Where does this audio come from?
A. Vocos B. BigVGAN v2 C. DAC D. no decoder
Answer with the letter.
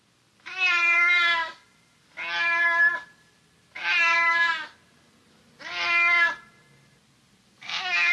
D